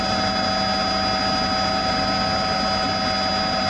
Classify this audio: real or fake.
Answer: real